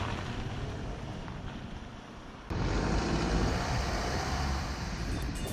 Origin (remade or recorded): remade